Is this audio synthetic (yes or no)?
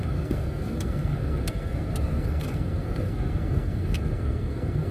yes